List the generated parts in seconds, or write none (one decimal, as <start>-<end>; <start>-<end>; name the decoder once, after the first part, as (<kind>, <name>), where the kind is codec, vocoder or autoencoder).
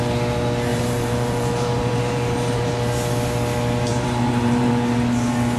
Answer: 0.7-2.7 (vocoder, BigVGAN v2); 3.9-4.7